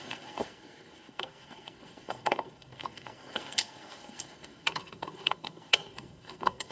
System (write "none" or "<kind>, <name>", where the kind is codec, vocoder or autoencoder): codec, SNAC